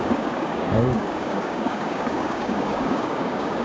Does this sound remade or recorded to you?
remade